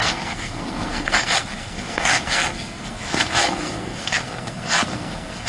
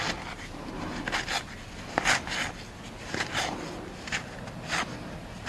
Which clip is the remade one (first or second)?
first